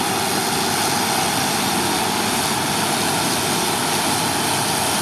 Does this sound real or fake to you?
real